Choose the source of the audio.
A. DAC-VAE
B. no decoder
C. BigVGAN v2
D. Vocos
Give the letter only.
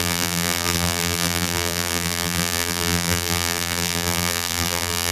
C